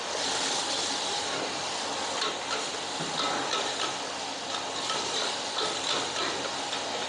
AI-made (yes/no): no